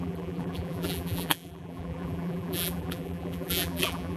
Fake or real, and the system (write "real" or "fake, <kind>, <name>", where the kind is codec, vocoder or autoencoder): fake, vocoder, BigVGAN v2